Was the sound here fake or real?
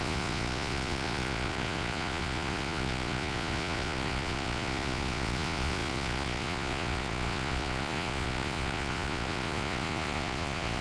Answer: fake